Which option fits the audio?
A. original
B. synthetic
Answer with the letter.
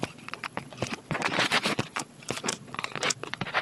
B